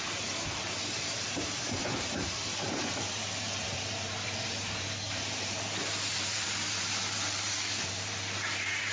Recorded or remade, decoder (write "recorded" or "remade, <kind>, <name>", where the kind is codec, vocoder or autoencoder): remade, vocoder, BigVGAN v2